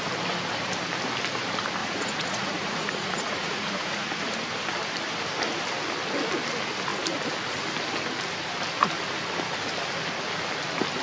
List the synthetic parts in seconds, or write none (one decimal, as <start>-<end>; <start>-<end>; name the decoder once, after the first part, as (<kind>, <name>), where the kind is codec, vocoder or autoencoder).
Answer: 1.8-4.1 (vocoder, Vocos)